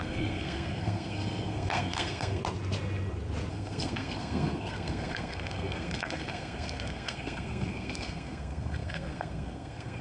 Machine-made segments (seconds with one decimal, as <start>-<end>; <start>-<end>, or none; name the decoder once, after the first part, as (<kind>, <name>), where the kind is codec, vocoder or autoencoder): 0.0-2.4 (codec, SNAC); 3.5-10.0

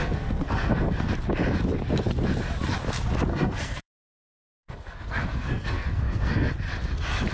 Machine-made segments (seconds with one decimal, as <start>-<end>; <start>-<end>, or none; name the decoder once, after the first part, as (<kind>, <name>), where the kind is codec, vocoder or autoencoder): 0.0-1.1 (codec, SNAC); 3.3-6.5

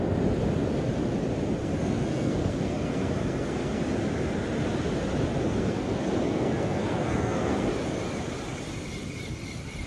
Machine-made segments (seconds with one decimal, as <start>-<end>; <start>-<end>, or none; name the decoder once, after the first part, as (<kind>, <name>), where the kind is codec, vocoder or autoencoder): 1.6-3.8 (codec, SNAC); 5.5-7.7

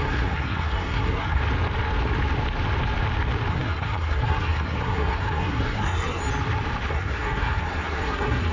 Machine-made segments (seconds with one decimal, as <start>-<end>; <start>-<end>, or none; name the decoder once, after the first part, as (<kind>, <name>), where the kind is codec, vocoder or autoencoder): 0.0-1.4 (codec, SNAC); 3.5-6.2; 6.9-8.5

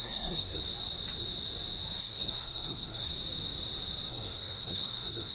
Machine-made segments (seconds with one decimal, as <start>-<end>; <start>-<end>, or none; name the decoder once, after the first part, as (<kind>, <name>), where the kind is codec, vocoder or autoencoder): 0.0-0.6 (codec, SNAC); 2.0-3.1; 4.1-5.3

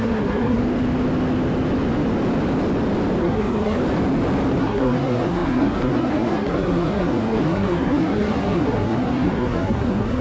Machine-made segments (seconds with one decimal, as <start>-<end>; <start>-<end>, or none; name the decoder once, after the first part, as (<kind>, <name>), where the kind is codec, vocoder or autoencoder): 0.0-0.6 (codec, SNAC); 3.2-3.8; 4.6-10.2